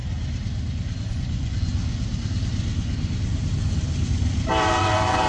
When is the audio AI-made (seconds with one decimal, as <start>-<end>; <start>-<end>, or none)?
1.1-1.7; 4.6-5.3